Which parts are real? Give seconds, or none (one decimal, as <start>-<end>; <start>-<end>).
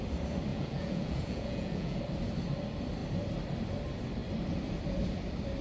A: 0.0-0.5; 2.0-5.6